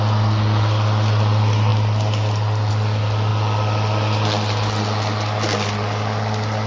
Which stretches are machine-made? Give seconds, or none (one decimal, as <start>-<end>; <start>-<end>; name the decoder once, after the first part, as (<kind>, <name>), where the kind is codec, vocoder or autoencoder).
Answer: none